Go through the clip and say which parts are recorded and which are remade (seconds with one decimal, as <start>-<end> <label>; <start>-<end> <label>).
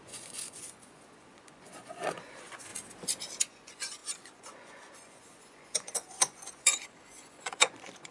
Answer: 0.0-2.7 remade; 2.7-3.4 recorded; 3.4-8.1 remade